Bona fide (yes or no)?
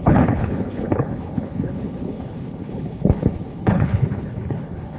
no